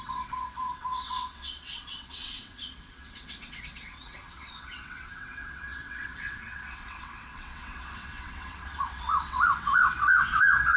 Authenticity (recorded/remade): remade